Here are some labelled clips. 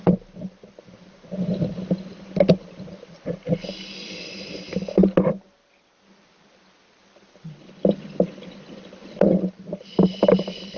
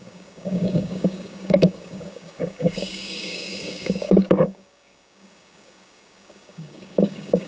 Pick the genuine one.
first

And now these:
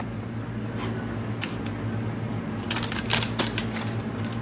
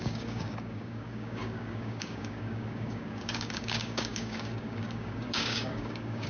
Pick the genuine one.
first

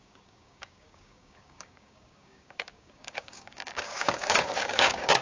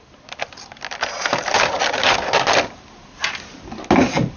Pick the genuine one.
second